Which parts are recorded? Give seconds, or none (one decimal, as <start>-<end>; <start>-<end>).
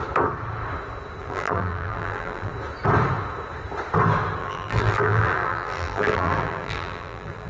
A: 0.0-1.2; 2.5-4.4